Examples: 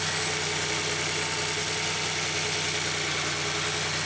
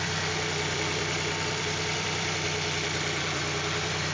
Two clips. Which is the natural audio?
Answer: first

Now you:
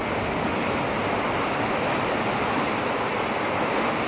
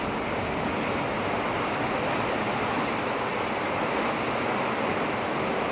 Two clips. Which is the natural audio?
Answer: second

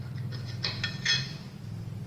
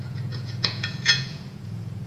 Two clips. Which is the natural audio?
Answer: first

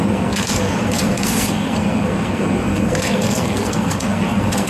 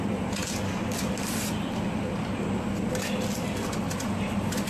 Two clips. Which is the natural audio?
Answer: second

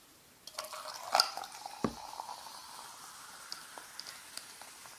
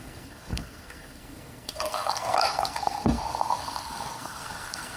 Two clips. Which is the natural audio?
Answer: first